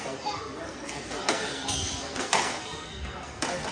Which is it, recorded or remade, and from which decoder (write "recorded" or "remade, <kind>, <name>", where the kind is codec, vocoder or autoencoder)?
remade, codec, SNAC